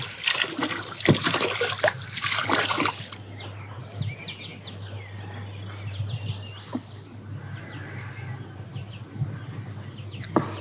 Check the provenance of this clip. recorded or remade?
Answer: recorded